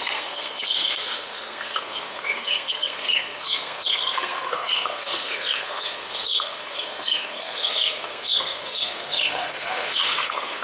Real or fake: fake